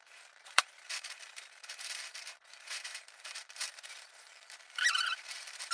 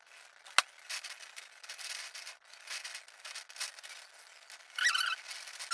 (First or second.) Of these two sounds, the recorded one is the second